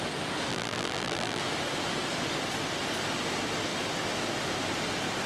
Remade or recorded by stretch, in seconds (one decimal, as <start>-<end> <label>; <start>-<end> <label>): 0.0-0.5 recorded; 0.5-1.4 remade; 1.4-5.3 recorded